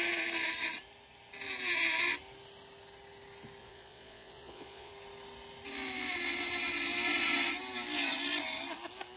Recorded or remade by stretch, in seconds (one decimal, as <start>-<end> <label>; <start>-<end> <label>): 0.0-3.6 recorded; 3.6-4.9 remade; 4.9-9.2 recorded